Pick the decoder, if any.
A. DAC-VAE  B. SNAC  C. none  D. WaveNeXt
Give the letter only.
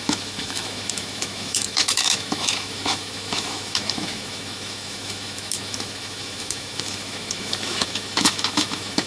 A